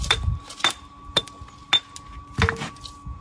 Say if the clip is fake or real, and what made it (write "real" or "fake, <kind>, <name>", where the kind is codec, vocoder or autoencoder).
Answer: real